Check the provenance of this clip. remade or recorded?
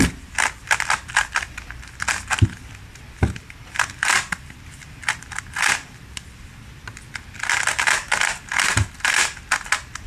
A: recorded